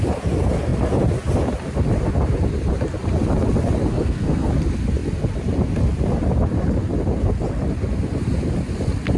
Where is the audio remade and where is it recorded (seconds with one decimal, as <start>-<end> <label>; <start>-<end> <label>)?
0.0-3.9 recorded; 3.9-4.5 remade; 4.5-9.2 recorded